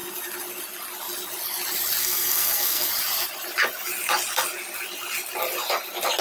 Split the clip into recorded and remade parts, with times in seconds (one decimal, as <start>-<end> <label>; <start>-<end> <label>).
0.0-2.0 recorded; 2.0-2.9 remade; 2.9-6.2 recorded

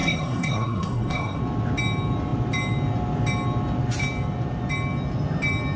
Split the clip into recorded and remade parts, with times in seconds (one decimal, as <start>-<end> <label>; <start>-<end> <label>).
0.0-1.4 remade; 1.4-5.8 recorded